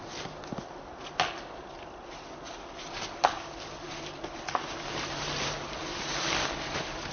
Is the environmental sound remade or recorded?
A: recorded